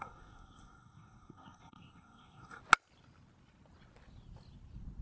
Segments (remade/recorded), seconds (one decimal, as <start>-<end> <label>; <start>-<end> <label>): 0.0-2.6 remade; 2.6-5.0 recorded